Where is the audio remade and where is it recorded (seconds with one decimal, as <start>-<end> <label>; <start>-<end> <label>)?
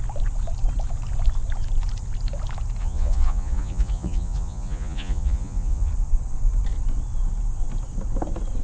0.0-2.8 recorded; 2.8-5.9 remade; 5.9-8.6 recorded